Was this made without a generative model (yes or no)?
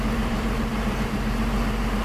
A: no